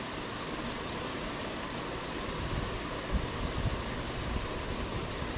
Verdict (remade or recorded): recorded